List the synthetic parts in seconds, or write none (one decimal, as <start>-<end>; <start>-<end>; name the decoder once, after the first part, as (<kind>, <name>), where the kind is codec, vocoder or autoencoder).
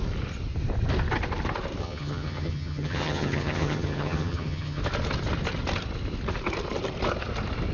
1.8-4.8 (vocoder, HiFi-GAN)